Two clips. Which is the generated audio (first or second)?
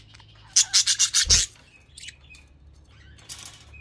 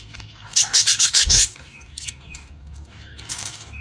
second